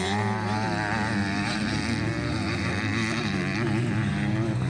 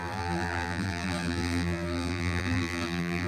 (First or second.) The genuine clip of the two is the first